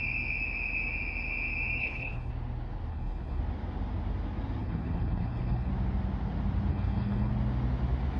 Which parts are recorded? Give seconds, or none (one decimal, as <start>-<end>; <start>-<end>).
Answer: 0.0-1.8; 2.3-2.9; 3.4-4.6; 5.7-6.7; 7.3-8.2